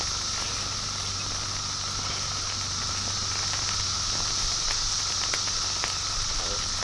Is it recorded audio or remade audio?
recorded